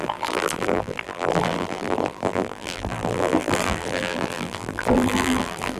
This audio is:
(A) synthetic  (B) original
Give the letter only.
A